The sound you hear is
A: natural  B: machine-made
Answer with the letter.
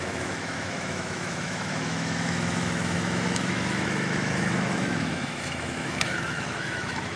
B